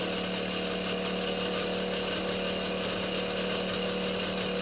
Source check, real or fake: real